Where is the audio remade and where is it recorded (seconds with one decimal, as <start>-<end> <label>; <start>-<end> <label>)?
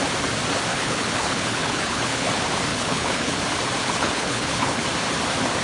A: 0.0-0.7 recorded; 0.7-2.3 remade; 2.3-2.7 recorded; 2.7-3.4 remade; 3.4-3.8 recorded; 3.8-4.8 remade; 4.8-5.6 recorded